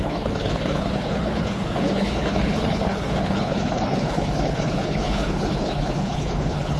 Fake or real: fake